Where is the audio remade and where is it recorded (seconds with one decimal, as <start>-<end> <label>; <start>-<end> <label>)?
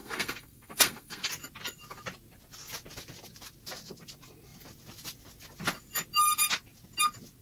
0.0-1.3 remade; 1.3-7.4 recorded